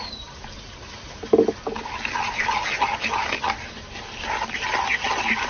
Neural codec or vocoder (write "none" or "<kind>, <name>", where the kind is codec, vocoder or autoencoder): none